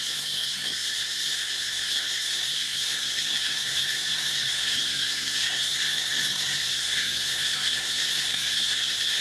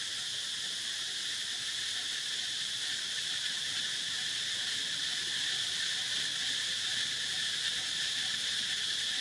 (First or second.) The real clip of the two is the second